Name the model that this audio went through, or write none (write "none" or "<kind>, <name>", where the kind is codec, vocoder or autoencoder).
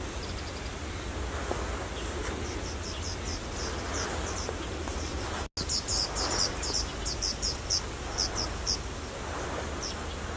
none